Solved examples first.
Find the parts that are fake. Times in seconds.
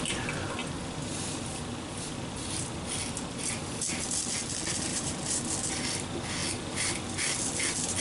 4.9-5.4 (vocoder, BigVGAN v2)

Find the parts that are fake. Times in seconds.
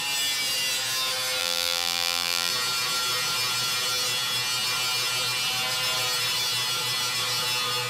1.4-2.5 (vocoder, BigVGAN v2)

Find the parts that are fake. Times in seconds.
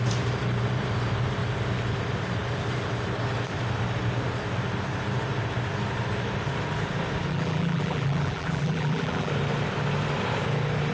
7.3-9.3 (vocoder, BigVGAN v2)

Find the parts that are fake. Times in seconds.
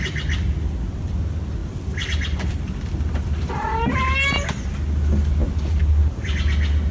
1.6-3.6 (vocoder, BigVGAN v2)